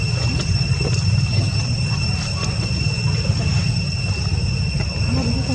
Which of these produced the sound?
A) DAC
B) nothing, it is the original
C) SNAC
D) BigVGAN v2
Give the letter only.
B